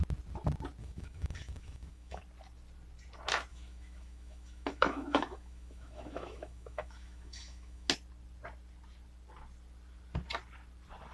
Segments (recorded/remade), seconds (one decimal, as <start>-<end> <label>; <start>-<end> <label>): 0.0-0.8 recorded; 0.8-2.2 remade; 2.2-3.5 recorded; 3.5-7.9 remade; 7.9-11.1 recorded